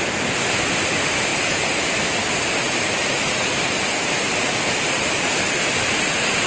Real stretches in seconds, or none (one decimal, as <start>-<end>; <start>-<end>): 0.0-6.5